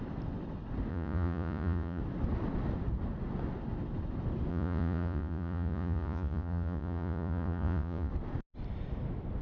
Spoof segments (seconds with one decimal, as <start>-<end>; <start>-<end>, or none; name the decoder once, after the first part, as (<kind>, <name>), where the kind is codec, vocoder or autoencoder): 0.9-2.0 (vocoder, Vocos); 4.5-8.1

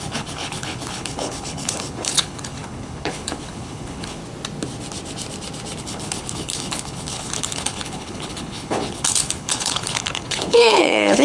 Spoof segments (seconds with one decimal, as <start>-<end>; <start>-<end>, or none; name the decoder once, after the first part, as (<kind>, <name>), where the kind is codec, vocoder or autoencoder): 0.0-4.2 (codec, HILCodec); 5.8-11.2

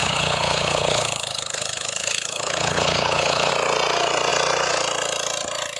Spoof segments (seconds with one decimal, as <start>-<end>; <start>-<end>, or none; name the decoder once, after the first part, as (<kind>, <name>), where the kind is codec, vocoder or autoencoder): 0.0-3.5 (codec, HILCodec)

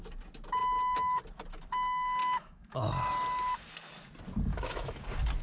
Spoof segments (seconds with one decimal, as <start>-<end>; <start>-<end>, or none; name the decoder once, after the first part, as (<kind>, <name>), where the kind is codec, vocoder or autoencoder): 2.2-2.8 (autoencoder, DAC-VAE); 4.5-5.0

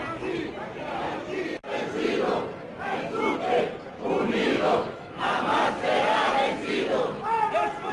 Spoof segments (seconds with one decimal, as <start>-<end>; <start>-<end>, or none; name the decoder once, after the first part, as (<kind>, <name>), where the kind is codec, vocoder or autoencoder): 4.4-5.2 (autoencoder, DAC-VAE)

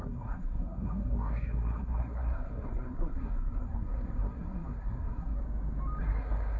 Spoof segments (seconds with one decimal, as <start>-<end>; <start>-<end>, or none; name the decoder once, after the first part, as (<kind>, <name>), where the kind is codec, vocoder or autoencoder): 0.0-5.4 (codec, SNAC); 6.0-6.6

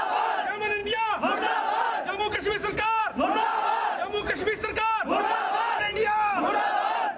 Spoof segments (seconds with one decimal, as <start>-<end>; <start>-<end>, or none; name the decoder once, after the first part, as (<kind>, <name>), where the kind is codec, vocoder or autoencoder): none

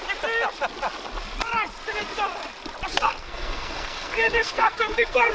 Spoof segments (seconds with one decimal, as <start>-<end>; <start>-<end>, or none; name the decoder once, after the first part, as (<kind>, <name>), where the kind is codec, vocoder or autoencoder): 2.9-5.3 (codec, SNAC)